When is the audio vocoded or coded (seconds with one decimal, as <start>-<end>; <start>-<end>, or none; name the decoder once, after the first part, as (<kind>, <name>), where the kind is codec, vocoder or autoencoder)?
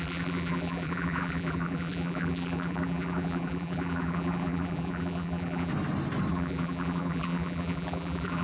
0.0-5.7 (vocoder, BigVGAN v2); 6.3-8.4